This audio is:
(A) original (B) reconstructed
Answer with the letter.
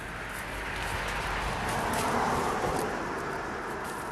A